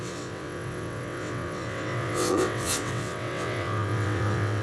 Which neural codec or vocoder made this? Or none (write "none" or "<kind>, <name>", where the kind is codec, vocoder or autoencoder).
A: vocoder, WaveNeXt